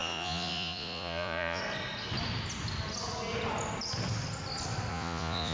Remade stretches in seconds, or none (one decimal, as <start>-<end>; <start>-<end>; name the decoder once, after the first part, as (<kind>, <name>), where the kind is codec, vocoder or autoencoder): 0.0-1.6 (vocoder, Vocos); 4.9-5.5